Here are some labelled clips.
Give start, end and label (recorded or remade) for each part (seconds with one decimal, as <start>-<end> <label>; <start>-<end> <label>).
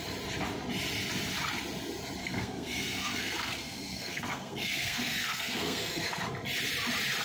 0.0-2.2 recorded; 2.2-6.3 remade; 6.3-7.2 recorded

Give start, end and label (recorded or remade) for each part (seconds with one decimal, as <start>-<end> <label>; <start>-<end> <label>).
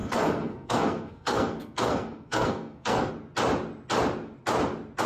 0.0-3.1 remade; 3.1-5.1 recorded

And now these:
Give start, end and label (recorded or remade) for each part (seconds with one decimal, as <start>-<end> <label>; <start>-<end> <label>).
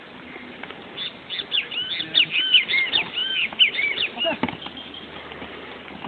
0.0-6.1 recorded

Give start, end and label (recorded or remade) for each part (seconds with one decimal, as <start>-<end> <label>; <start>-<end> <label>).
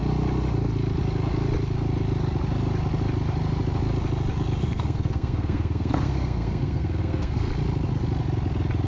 0.0-4.6 recorded; 4.6-7.5 remade; 7.5-8.9 recorded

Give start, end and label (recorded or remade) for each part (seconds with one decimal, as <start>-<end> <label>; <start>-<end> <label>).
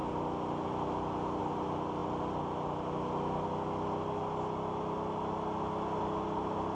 0.0-6.7 recorded